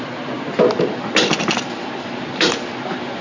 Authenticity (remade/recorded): recorded